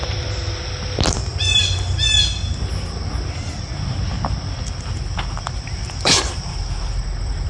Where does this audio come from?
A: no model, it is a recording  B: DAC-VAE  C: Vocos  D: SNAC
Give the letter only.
A